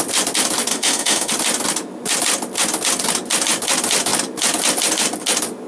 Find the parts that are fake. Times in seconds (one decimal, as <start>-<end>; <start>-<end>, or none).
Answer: 0.7-1.3